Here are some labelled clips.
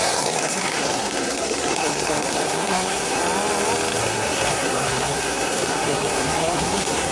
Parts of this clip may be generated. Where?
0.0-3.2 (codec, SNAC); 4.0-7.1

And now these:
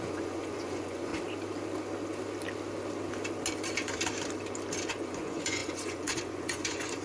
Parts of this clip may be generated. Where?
0.0-1.1 (vocoder, Vocos); 4.9-7.0

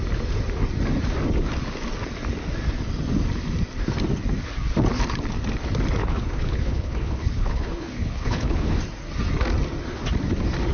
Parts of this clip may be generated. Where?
6.0-8.8 (codec, HILCodec)

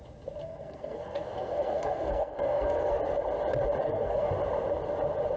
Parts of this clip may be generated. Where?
0.4-3.0 (codec, SNAC); 3.8-4.3

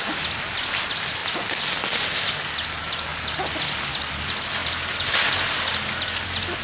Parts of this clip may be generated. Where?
4.6-5.2 (vocoder, BigVGAN v2)